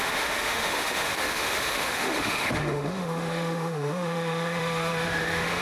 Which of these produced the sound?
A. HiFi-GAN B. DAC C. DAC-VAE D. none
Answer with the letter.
C